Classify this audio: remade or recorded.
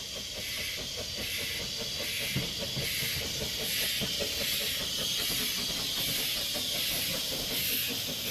recorded